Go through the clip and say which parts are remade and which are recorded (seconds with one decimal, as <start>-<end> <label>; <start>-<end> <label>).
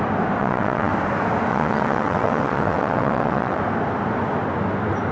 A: 0.0-0.4 recorded; 0.4-0.9 remade; 0.9-1.5 recorded; 1.5-3.6 remade; 3.6-5.1 recorded